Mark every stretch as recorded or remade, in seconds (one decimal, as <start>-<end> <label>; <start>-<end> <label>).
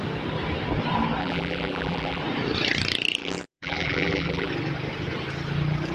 0.0-1.2 recorded; 1.2-2.2 remade; 2.2-3.2 recorded; 3.2-4.5 remade; 4.5-5.9 recorded